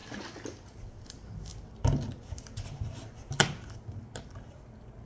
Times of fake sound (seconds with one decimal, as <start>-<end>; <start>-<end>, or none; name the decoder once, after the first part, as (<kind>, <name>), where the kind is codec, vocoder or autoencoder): none